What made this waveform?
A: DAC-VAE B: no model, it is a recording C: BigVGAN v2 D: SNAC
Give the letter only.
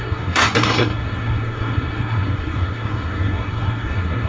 D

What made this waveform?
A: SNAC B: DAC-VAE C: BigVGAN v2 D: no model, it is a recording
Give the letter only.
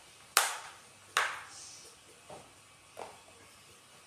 D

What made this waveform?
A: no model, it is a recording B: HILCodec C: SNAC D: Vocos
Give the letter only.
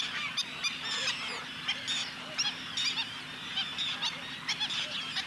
A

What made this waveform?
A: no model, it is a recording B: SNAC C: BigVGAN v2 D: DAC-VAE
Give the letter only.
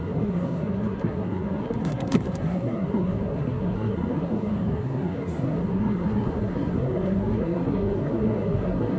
B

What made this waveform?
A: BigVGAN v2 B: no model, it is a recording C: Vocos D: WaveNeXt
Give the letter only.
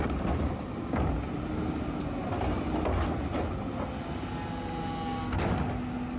B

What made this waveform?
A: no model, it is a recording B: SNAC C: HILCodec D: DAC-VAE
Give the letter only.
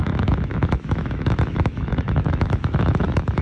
D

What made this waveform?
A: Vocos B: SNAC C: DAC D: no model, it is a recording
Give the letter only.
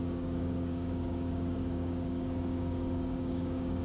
C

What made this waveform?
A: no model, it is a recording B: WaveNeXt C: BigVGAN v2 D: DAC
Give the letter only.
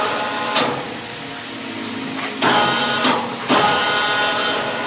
A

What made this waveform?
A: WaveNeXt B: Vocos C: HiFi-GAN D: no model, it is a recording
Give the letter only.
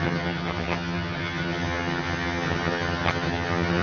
C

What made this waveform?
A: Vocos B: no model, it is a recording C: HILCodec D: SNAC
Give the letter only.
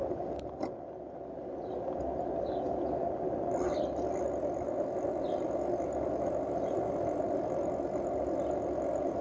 B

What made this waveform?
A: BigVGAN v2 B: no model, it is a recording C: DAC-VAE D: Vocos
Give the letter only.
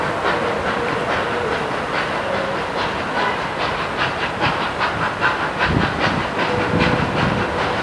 B